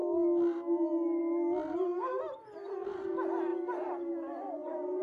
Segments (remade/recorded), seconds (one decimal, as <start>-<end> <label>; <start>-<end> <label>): 0.0-1.9 recorded; 1.9-3.1 remade; 3.1-5.0 recorded